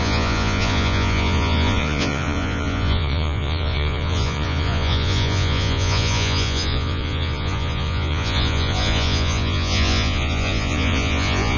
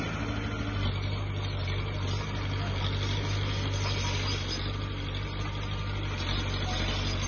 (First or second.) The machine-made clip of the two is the first